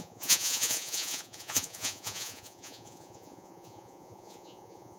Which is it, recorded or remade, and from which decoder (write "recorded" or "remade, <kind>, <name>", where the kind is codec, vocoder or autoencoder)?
remade, vocoder, Vocos